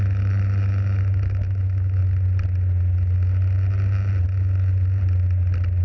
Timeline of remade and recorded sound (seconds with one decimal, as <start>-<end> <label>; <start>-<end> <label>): 0.0-2.0 remade; 2.0-5.8 recorded